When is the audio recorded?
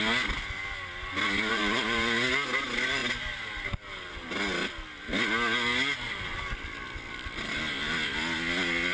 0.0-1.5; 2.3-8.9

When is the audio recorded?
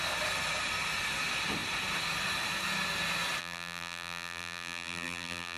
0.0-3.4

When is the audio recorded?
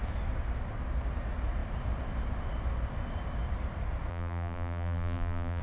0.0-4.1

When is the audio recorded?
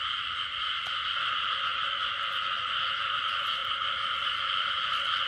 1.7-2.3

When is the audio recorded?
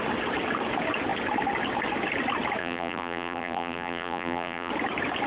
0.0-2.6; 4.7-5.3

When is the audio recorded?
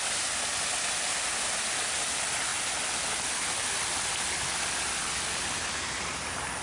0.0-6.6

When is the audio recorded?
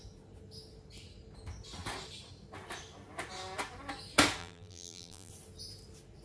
0.0-4.4; 5.3-6.2